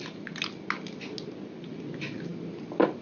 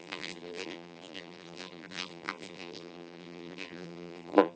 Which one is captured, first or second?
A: first